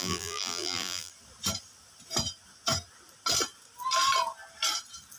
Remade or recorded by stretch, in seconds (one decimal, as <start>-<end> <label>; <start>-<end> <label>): 0.0-1.1 remade; 1.1-5.2 recorded

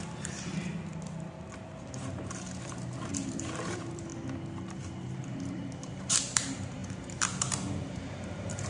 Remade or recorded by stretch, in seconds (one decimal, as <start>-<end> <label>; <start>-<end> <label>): 0.0-0.7 remade; 0.7-1.8 recorded; 1.8-4.1 remade; 4.1-4.8 recorded; 4.8-8.7 remade

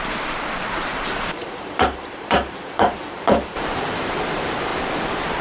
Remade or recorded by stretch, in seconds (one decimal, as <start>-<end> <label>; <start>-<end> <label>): 0.0-0.9 recorded; 0.9-4.1 remade; 4.1-5.4 recorded

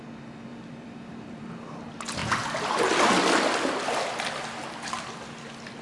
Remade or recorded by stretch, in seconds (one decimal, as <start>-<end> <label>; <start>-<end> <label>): 0.0-0.5 recorded; 0.5-1.4 remade; 1.4-5.8 recorded

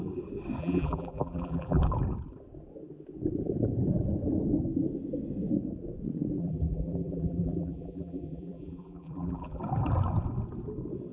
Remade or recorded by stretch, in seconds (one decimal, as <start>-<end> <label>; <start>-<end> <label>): 0.0-0.6 recorded; 0.6-1.9 remade; 1.9-6.4 recorded; 6.4-9.6 remade; 9.6-11.1 recorded